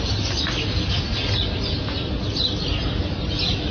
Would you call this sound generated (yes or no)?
no